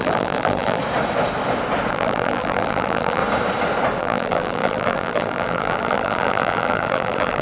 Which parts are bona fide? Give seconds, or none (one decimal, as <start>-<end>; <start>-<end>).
0.8-1.9; 3.2-4.0

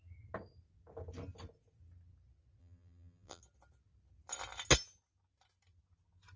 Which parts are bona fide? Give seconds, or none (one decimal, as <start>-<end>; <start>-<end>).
0.0-2.6; 3.4-6.4

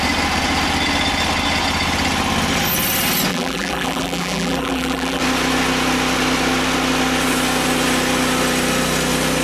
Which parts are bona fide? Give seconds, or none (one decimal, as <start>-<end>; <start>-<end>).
0.0-3.3; 5.2-9.4

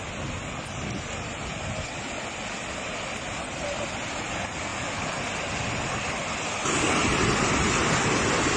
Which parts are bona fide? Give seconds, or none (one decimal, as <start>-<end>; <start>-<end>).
0.0-1.5; 2.2-8.6

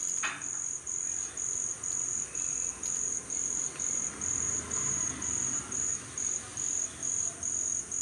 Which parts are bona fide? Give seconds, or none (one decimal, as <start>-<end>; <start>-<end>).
0.0-4.3; 6.0-8.0

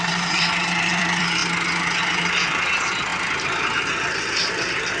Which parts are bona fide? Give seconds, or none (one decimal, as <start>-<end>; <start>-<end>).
1.4-2.0; 3.1-3.8